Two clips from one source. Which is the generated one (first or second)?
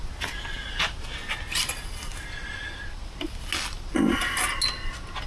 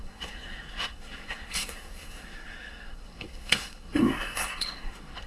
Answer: second